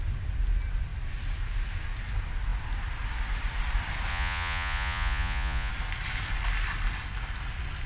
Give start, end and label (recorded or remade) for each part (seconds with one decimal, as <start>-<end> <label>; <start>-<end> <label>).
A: 0.0-4.1 recorded; 4.1-5.7 remade; 5.7-7.9 recorded